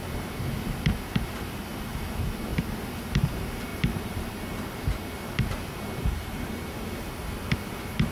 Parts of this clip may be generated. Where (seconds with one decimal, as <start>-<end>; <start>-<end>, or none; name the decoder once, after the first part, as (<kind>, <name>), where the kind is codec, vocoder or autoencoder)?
1.8-2.5 (vocoder, BigVGAN v2); 3.2-7.2